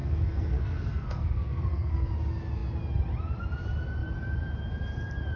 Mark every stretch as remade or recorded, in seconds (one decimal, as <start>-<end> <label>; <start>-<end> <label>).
0.0-2.1 remade; 2.1-5.4 recorded